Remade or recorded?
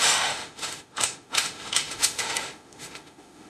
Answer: remade